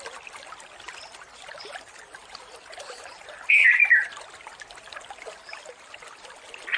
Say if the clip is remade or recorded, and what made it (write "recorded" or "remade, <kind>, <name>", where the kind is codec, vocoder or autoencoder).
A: recorded